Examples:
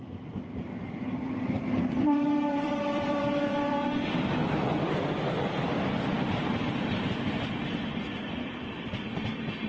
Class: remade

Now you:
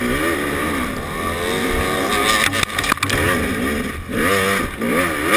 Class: recorded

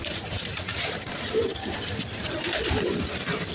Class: remade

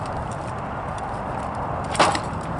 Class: recorded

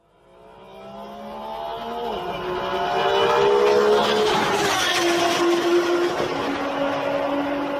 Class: recorded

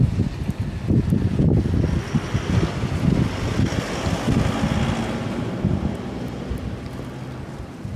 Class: recorded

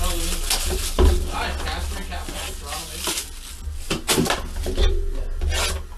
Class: recorded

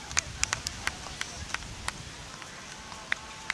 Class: recorded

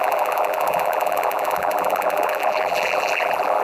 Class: remade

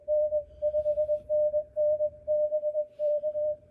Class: remade